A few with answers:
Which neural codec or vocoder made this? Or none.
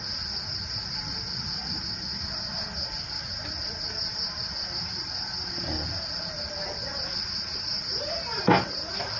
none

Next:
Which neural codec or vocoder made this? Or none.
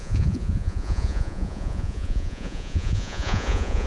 vocoder, Vocos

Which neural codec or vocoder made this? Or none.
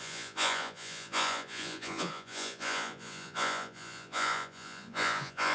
vocoder, Vocos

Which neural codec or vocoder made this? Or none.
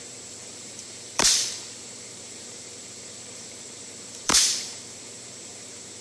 vocoder, BigVGAN v2